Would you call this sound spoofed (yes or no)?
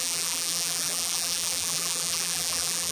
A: yes